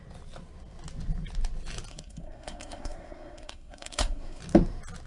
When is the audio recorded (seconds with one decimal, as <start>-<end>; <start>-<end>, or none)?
0.0-1.9; 4.4-5.1